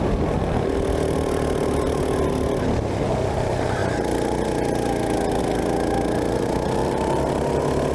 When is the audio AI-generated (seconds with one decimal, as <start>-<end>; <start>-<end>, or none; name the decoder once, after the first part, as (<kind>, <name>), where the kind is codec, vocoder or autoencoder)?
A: 6.8-7.4 (vocoder, BigVGAN v2)